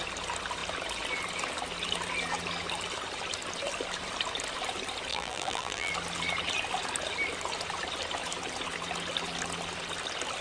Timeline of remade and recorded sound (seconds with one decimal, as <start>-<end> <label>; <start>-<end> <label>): 0.0-5.1 recorded; 5.1-5.9 remade; 5.9-10.4 recorded